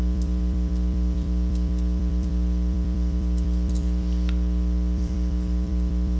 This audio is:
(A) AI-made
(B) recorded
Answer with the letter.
A